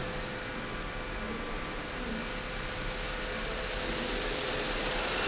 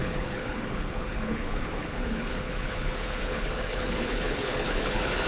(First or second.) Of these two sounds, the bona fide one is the first